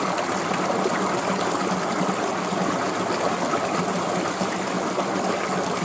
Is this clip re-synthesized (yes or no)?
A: no